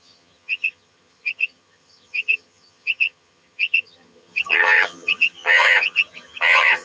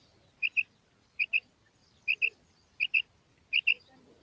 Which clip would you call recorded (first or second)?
second